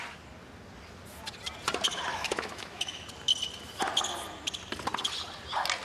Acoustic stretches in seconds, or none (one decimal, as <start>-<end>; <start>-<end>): 0.0-2.1; 3.0-5.8